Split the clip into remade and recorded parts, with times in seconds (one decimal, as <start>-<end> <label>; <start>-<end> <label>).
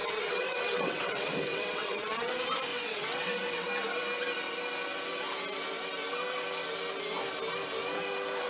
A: 0.0-2.3 remade; 2.3-2.7 recorded; 2.7-3.7 remade; 3.7-8.5 recorded